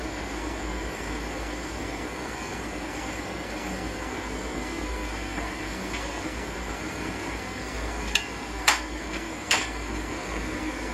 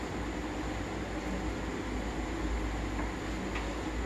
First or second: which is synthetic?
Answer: first